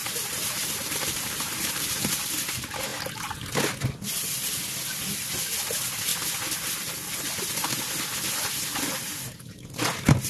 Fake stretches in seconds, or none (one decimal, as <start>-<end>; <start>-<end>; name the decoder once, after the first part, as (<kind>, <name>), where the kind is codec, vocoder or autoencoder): 0.0-2.1 (vocoder, BigVGAN v2)